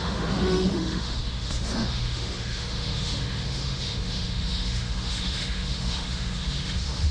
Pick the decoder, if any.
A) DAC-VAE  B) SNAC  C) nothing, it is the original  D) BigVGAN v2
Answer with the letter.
A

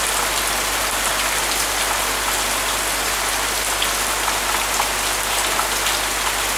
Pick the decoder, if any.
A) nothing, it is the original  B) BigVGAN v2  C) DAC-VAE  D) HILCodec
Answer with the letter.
A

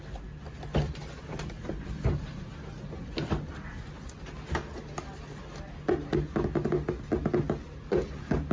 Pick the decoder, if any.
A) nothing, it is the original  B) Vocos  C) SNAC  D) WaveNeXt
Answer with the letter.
A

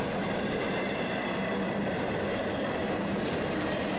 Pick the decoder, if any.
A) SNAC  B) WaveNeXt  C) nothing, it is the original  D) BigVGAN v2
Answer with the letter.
D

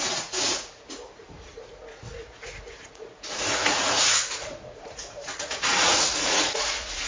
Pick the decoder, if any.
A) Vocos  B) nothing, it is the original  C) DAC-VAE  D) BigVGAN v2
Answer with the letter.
A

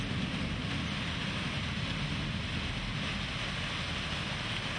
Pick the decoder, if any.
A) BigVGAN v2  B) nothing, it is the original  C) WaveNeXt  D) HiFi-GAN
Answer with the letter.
B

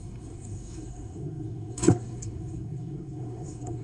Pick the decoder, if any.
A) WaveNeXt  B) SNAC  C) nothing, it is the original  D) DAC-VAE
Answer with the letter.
B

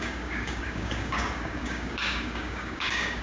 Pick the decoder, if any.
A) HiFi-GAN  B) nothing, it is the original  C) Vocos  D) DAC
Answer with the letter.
D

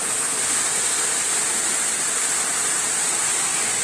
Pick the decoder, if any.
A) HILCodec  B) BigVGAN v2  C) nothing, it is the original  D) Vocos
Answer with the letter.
C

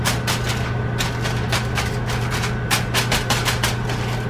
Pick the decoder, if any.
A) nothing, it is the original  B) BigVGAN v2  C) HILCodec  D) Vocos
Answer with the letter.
A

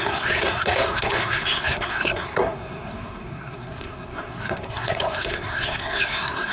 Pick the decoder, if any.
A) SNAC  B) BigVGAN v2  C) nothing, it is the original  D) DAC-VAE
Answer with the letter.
A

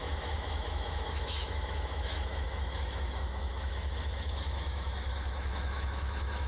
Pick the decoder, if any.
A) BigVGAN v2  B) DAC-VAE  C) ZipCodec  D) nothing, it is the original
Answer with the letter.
B